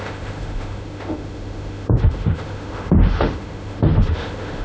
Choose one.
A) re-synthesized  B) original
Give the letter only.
A